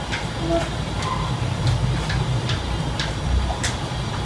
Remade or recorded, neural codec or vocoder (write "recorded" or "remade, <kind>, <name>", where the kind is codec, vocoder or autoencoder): recorded